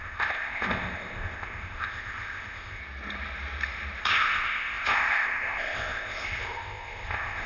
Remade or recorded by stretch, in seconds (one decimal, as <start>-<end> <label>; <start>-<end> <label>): 0.0-2.8 remade; 2.8-4.0 recorded; 4.0-7.5 remade